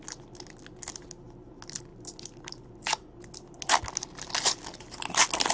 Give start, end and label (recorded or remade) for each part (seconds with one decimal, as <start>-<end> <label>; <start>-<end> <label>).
0.0-5.5 recorded